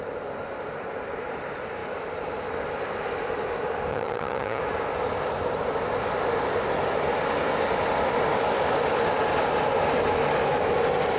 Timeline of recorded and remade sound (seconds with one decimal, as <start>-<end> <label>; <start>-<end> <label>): 0.0-3.9 recorded; 3.9-4.6 remade; 4.6-11.2 recorded